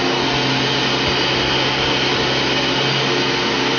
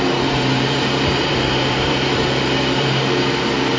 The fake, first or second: second